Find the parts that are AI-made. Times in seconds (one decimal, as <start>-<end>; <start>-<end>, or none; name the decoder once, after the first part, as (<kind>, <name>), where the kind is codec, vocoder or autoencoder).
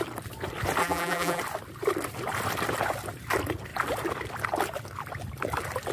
0.8-1.4 (vocoder, BigVGAN v2)